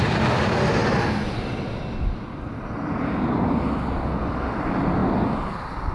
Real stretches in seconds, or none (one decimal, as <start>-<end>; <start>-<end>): 0.0-5.9